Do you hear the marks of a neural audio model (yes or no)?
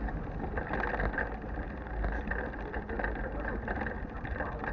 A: no